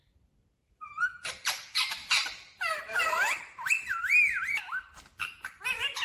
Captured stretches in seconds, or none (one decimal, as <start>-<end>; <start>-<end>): 0.0-2.0; 5.6-6.0